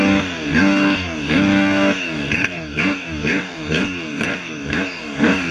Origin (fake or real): fake